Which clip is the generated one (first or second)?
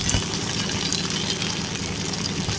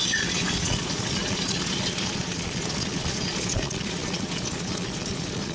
second